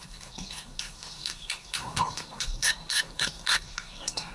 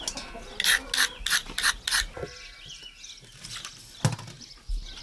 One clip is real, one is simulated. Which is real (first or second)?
second